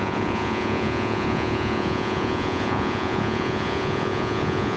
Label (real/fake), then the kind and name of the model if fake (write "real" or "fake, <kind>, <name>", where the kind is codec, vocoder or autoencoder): fake, vocoder, Vocos